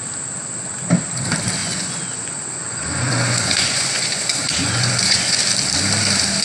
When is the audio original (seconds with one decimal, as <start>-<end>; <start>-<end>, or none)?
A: 0.0-1.6; 5.4-6.4

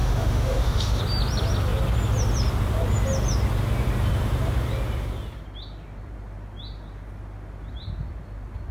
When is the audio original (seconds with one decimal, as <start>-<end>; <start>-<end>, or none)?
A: 1.0-8.7

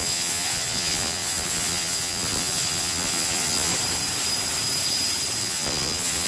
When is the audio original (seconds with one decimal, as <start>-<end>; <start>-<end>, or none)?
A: 3.7-5.4

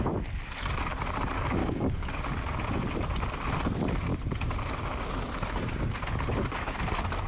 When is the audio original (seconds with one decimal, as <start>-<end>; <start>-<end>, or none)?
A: 0.0-1.6; 2.2-7.3

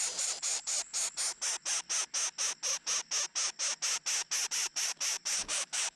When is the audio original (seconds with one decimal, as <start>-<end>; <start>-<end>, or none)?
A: 0.9-4.5

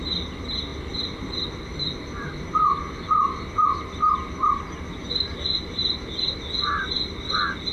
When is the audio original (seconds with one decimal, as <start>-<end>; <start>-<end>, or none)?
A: 5.8-6.5

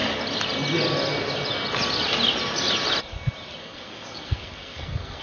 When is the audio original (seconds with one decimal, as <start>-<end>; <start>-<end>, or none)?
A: 0.0-3.6